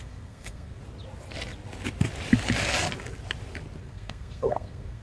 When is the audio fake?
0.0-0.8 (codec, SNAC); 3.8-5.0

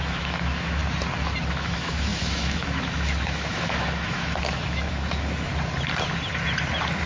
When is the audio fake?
0.0-0.8 (autoencoder, DAC-VAE); 1.5-5.5

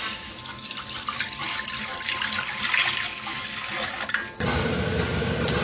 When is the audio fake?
none

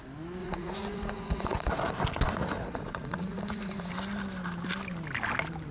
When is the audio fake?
0.4-1.9 (vocoder, Vocos); 2.4-3.9

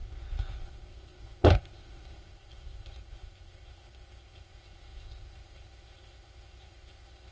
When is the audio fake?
0.0-7.3 (codec, ZipCodec)

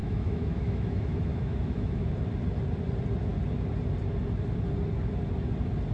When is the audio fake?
0.0-2.1 (autoencoder, DAC-VAE)

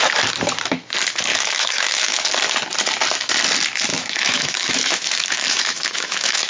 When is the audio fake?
1.3-2.3 (autoencoder, DAC-VAE); 3.9-6.5